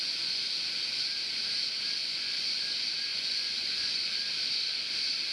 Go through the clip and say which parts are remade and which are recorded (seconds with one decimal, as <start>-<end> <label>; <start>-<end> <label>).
0.0-0.5 remade; 0.5-2.0 recorded; 2.0-2.6 remade; 2.6-3.1 recorded; 3.1-4.1 remade; 4.1-5.3 recorded